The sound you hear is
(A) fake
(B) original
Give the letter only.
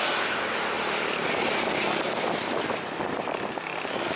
B